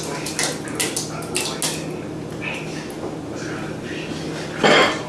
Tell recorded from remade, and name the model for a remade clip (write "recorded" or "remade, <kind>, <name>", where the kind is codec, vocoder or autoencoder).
recorded